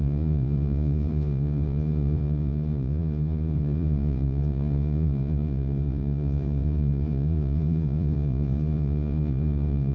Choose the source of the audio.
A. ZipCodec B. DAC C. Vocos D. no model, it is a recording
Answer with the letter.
C